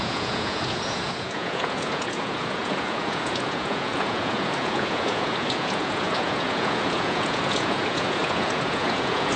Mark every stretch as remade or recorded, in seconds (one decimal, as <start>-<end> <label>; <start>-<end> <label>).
0.0-9.4 remade